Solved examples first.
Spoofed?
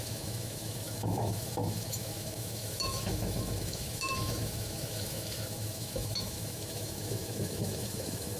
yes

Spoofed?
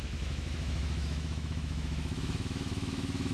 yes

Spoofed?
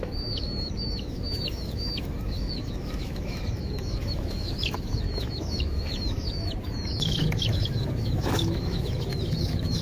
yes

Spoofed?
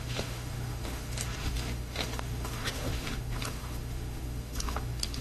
yes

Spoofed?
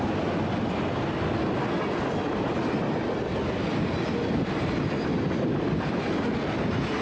no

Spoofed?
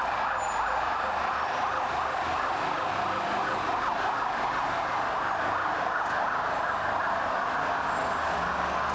no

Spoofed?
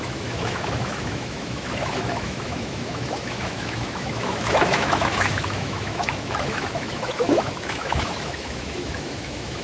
yes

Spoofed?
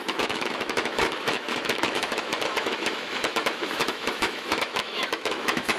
yes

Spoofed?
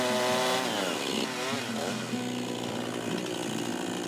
no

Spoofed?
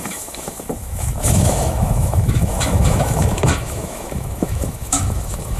yes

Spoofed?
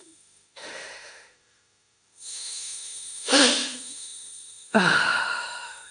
yes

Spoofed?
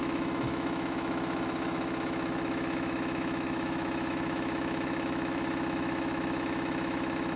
yes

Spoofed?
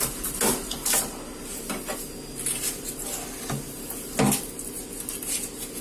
no